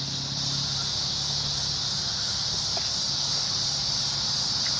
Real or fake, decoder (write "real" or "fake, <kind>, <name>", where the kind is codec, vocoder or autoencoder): real